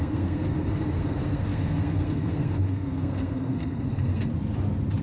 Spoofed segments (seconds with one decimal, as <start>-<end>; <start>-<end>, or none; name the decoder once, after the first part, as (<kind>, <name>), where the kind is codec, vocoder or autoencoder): 0.0-4.3 (codec, SNAC)